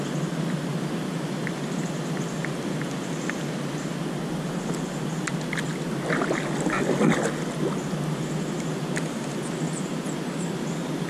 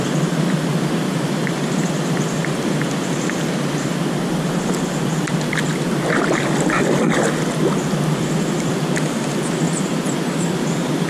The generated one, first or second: second